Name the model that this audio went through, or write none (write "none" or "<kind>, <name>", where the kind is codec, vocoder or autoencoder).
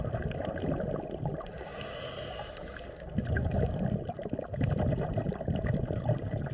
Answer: none